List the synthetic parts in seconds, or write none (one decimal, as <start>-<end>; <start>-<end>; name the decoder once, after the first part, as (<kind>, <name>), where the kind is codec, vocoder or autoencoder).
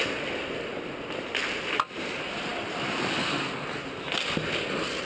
none